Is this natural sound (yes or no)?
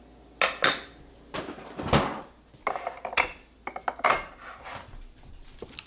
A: yes